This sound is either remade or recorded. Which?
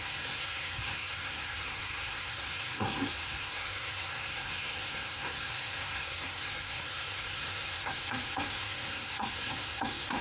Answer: remade